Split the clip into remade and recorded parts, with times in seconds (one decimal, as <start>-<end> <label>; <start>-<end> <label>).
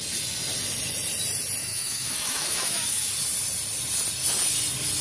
0.0-1.6 recorded; 1.6-3.1 remade; 3.1-5.0 recorded